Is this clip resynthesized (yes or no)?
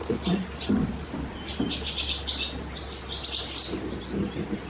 no